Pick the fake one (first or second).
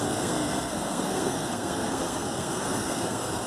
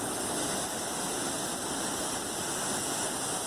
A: first